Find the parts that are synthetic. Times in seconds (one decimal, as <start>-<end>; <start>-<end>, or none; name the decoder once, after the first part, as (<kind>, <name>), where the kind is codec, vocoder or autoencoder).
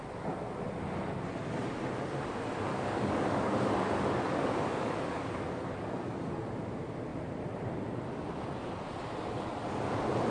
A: 2.7-6.3 (codec, DAC)